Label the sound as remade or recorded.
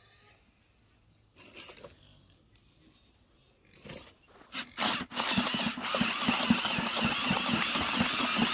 recorded